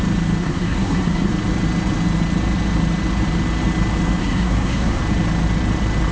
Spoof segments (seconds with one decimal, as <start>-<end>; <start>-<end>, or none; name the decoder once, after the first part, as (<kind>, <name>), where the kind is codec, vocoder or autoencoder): 0.4-1.3 (codec, SNAC); 4.2-5.0